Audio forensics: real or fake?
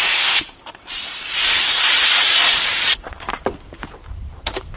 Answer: fake